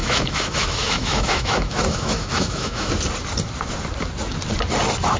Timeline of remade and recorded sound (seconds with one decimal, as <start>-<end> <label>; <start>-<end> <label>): 0.0-2.9 remade; 2.9-5.2 recorded